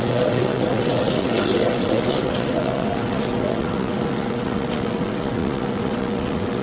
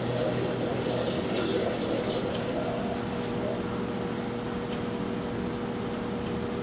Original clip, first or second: second